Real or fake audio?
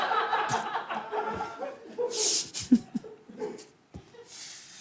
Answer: real